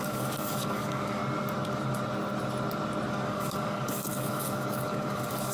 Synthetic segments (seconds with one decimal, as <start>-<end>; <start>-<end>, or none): 0.0-1.2; 3.1-5.5